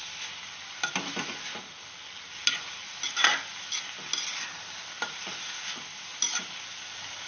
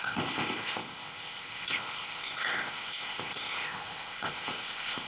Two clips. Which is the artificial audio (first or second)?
second